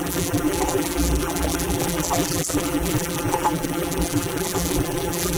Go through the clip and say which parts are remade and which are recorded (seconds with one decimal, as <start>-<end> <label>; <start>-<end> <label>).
0.0-5.4 remade